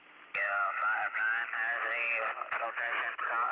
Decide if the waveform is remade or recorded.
recorded